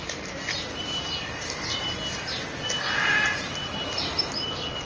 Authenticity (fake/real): real